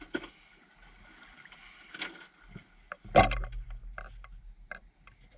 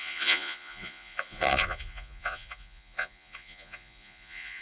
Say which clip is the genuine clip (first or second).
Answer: first